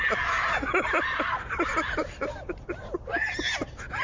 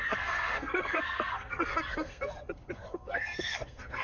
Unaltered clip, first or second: first